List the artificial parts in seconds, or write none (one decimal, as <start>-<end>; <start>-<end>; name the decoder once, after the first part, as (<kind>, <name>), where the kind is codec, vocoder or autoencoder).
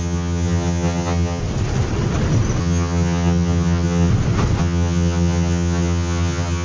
0.0-1.4 (vocoder, HiFi-GAN); 2.6-4.1; 4.6-6.6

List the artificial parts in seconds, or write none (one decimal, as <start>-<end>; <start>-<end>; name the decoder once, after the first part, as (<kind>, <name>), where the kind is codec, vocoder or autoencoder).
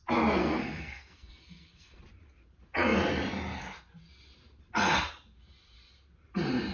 0.4-2.0 (codec, SNAC)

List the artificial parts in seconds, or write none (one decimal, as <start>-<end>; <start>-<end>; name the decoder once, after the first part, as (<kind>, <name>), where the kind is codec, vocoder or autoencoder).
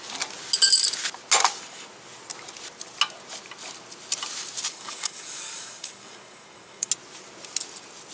4.7-6.9 (codec, DAC)